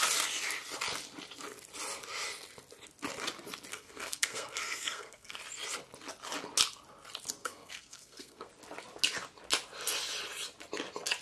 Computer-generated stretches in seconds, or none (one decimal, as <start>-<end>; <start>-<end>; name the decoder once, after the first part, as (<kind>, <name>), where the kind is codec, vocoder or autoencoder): 3.7-5.4 (codec, SNAC); 7.4-8.5